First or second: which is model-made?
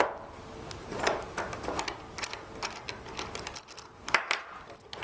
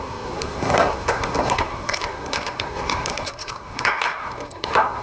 second